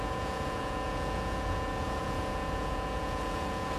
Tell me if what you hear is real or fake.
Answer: fake